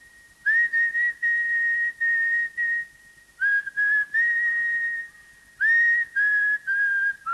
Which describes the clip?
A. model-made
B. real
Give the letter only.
B